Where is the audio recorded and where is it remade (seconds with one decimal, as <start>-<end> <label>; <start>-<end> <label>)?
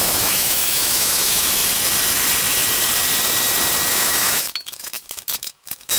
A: 0.0-1.6 remade; 1.6-3.9 recorded; 3.9-6.0 remade